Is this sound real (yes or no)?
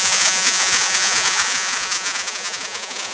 no